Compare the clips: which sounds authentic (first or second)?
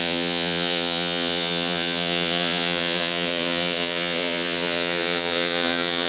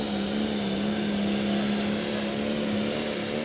second